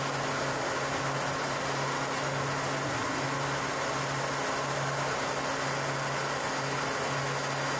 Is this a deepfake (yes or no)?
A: no